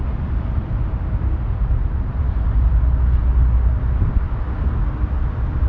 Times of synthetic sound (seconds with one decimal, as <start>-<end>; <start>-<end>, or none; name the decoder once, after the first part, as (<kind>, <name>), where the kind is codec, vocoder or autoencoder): 0.6-2.6 (vocoder, BigVGAN v2)